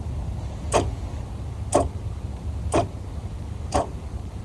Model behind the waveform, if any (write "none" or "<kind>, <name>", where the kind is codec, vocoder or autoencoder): none